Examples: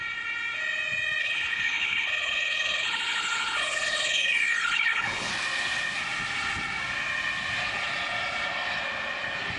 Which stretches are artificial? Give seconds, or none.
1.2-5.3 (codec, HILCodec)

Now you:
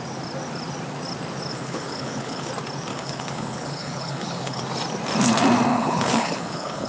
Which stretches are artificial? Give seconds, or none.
1.5-2.5 (codec, HILCodec); 2.9-4.6; 5.7-6.9